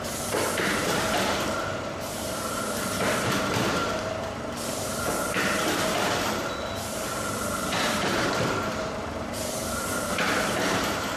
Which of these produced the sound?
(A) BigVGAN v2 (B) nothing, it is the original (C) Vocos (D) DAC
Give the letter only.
A